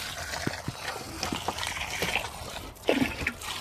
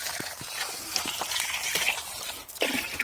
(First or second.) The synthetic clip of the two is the second